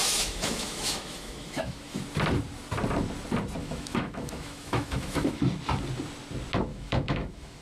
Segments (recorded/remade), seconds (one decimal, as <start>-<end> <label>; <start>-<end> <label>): 0.0-2.0 remade; 2.0-3.6 recorded; 3.6-5.4 remade; 5.4-6.7 recorded; 6.7-7.6 remade